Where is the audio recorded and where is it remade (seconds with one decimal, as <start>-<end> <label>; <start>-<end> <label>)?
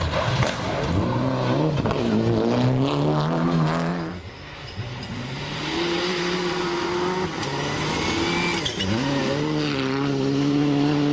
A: 0.0-3.9 recorded; 3.9-6.6 remade; 6.6-11.1 recorded